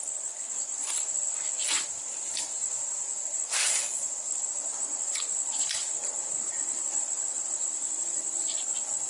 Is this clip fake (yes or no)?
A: yes